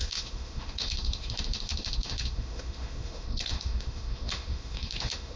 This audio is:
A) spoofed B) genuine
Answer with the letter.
A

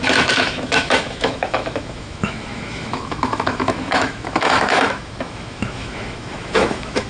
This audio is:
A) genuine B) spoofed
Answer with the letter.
B